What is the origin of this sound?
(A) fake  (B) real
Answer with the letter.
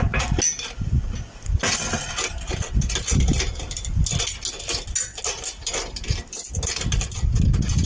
B